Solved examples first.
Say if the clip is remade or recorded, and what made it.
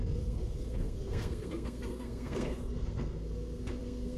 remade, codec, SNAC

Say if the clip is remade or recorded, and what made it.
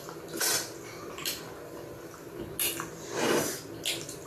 recorded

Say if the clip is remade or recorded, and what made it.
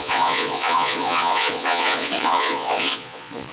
remade, vocoder, Vocos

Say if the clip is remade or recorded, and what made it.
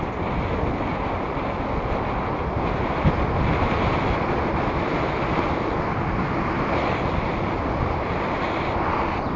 recorded